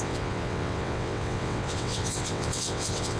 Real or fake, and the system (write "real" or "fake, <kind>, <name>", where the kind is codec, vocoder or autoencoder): fake, vocoder, WaveNeXt